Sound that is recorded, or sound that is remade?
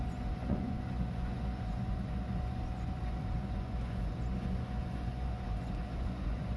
remade